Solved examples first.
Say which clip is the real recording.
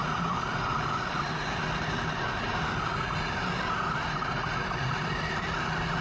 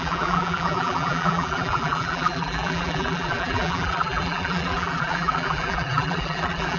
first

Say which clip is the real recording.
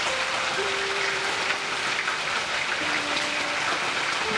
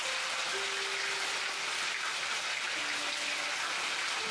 second